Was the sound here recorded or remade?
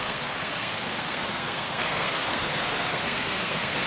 remade